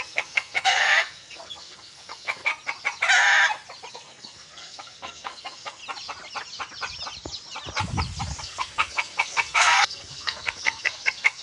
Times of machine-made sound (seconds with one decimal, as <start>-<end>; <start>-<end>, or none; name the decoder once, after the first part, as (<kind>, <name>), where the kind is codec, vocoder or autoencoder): 0.0-2.5 (codec, SNAC); 3.9-5.8; 8.4-11.4

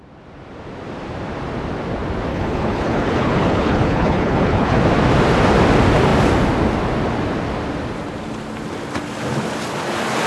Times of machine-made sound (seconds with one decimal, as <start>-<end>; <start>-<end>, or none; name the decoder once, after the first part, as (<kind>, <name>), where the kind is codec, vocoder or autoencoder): 2.3-4.8 (codec, HILCodec)

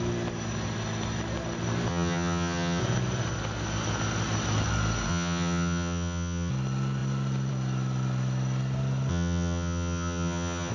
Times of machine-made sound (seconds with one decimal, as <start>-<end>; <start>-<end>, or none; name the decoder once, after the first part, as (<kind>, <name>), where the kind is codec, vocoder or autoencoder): 1.9-2.8 (vocoder, HiFi-GAN); 5.1-6.5; 9.1-10.7

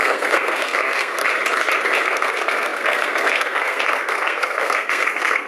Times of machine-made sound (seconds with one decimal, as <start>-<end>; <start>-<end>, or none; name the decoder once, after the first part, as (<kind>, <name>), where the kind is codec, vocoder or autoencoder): 0.0-1.2 (codec, SNAC); 2.0-5.5

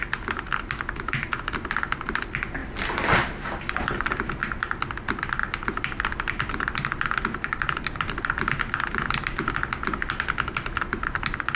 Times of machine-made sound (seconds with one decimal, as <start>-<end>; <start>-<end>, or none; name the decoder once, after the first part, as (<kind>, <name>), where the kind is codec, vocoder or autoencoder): 2.6-4.1 (vocoder, BigVGAN v2); 5.4-8.3

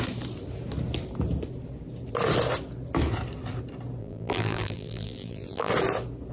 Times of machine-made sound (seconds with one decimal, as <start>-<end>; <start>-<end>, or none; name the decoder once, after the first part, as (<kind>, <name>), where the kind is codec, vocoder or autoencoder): 4.0-5.7 (vocoder, BigVGAN v2)

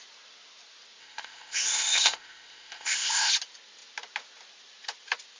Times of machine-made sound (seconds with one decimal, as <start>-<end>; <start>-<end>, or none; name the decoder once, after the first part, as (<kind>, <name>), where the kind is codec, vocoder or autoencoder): 1.0-3.3 (codec, ZipCodec)

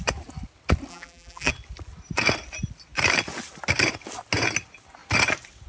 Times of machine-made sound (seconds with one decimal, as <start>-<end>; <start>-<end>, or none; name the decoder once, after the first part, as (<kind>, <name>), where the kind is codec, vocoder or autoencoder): 0.9-1.5 (vocoder, BigVGAN v2)